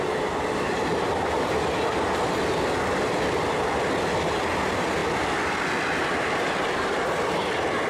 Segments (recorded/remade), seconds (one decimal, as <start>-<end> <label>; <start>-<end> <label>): 0.0-7.9 recorded